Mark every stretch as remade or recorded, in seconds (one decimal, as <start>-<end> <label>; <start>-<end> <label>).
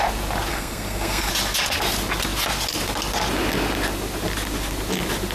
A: 0.0-0.5 recorded; 0.5-1.3 remade; 1.3-5.3 recorded